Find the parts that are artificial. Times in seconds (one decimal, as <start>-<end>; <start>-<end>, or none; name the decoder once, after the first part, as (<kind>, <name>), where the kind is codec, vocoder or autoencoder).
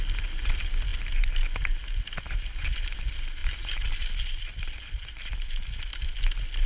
3.4-5.9 (vocoder, BigVGAN v2)